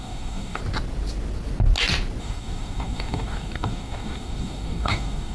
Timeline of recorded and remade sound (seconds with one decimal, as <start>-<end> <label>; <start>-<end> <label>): 0.0-0.6 remade; 0.6-2.2 recorded; 2.2-5.3 remade